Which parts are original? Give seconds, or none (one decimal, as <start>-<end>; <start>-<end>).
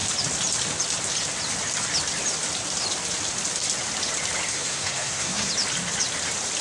0.0-4.5; 5.5-6.6